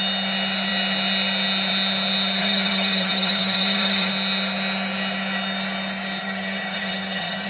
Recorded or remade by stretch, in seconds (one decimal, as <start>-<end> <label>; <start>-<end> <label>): 0.0-2.4 recorded; 2.4-4.1 remade; 4.1-6.2 recorded; 6.2-7.5 remade